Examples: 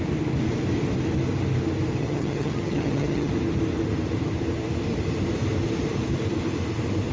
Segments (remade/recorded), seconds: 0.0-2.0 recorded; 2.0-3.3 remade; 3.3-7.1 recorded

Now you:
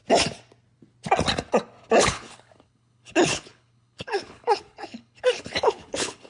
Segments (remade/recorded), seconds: 0.0-2.0 recorded; 2.0-6.3 remade